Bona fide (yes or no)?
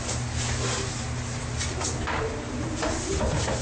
yes